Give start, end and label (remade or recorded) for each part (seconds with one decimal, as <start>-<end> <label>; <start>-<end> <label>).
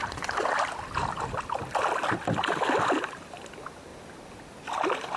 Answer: 0.0-5.2 recorded